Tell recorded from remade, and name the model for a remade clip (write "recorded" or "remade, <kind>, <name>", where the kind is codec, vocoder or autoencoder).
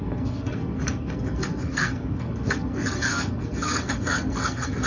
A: remade, codec, SNAC